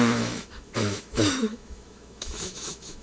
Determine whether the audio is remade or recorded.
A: remade